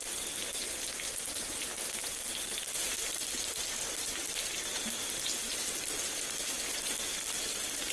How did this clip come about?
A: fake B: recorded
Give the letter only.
B